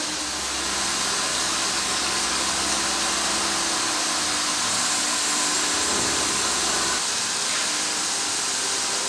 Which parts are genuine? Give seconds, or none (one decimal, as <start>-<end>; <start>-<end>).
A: 0.0-1.3; 2.8-9.1